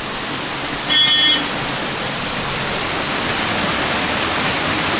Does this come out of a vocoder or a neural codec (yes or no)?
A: no